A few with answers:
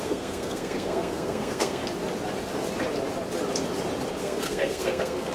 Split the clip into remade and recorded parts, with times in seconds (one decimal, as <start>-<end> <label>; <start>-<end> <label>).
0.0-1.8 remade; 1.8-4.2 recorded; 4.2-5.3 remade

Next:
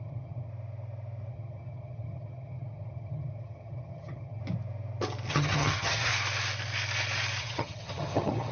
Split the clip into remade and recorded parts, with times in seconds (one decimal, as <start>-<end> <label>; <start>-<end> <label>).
0.0-0.5 remade; 0.5-1.3 recorded; 1.3-4.4 remade; 4.4-5.3 recorded; 5.3-6.1 remade; 6.1-7.4 recorded; 7.4-8.5 remade

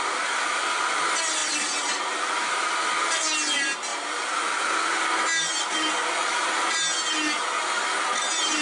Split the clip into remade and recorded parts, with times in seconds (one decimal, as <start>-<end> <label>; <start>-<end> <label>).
0.0-1.4 recorded; 1.4-2.7 remade; 2.7-3.9 recorded; 3.9-4.4 remade; 4.4-8.6 recorded

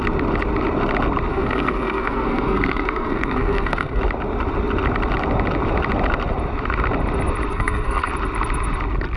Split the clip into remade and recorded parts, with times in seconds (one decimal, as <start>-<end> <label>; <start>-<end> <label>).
0.0-1.3 recorded; 1.3-4.0 remade; 4.0-7.5 recorded; 7.5-8.1 remade; 8.1-9.2 recorded

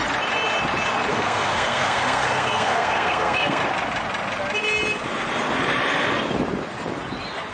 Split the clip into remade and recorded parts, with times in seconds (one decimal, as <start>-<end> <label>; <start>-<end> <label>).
0.0-1.1 recorded; 1.1-3.6 remade; 3.6-7.5 recorded

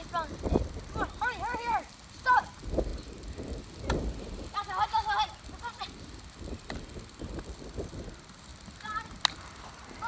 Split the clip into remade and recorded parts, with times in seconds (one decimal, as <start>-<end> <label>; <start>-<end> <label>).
0.0-2.9 recorded; 2.9-3.6 remade; 3.6-10.1 recorded